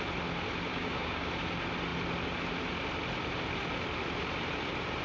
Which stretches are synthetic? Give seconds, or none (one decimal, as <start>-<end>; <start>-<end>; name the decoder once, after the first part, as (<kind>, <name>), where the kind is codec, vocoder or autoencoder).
0.7-1.3 (codec, DAC)